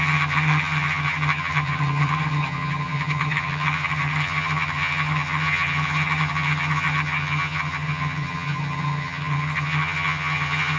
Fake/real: fake